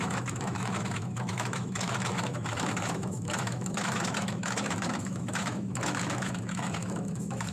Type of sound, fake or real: fake